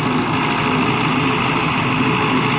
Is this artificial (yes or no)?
no